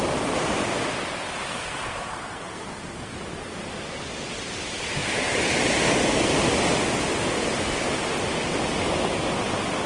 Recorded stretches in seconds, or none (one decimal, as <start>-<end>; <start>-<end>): 0.0-1.5; 3.2-9.9